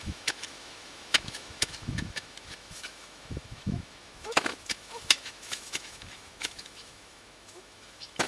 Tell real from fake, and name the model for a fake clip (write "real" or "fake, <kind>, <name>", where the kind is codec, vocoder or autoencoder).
fake, autoencoder, DAC-VAE